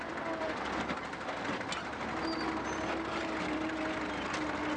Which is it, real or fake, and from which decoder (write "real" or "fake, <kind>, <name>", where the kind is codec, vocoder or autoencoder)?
real